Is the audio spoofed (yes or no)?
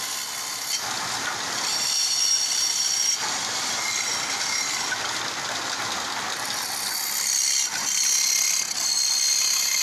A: no